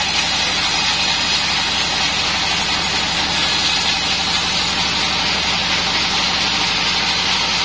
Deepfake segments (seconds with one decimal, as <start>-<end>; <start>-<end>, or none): none